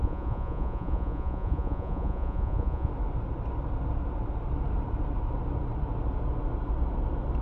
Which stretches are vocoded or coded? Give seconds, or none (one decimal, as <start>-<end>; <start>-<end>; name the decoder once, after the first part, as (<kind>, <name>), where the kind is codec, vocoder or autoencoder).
0.0-2.9 (vocoder, Vocos)